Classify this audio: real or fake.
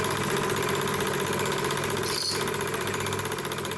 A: real